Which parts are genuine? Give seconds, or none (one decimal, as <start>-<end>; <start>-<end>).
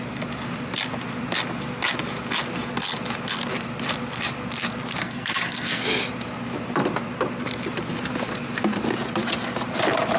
0.0-5.0; 5.8-10.2